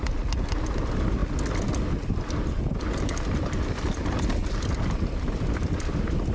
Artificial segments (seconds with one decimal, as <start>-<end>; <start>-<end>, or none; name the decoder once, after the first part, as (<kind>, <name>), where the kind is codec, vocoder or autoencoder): none